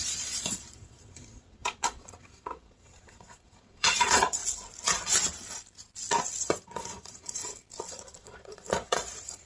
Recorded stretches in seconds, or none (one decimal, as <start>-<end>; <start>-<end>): 4.4-6.4; 7.4-7.9